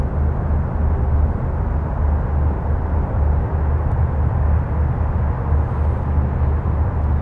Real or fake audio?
real